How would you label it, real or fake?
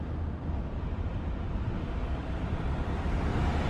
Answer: real